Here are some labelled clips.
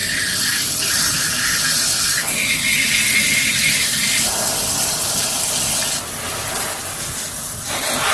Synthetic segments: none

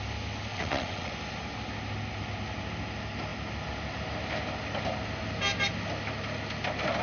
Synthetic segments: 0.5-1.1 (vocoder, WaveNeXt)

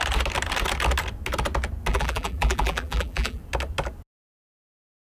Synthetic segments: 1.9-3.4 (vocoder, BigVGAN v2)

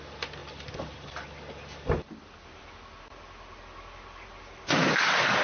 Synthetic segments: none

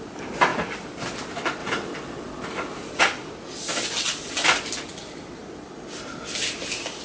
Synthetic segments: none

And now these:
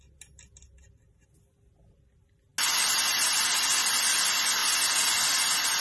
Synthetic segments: none

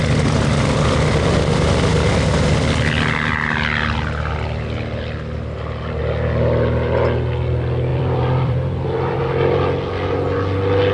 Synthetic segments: 7.9-9.2 (vocoder, BigVGAN v2)

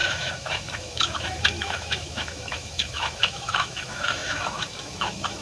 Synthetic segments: 0.0-5.4 (autoencoder, DAC-VAE)